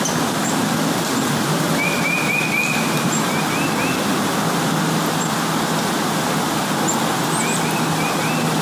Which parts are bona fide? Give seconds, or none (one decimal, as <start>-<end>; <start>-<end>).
0.0-8.6